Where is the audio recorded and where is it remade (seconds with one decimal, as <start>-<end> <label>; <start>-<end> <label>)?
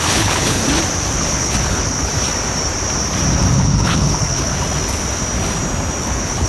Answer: 0.0-0.6 remade; 0.6-1.2 recorded; 1.2-2.1 remade; 2.1-3.5 recorded; 3.5-4.5 remade; 4.5-6.0 recorded; 6.0-6.5 remade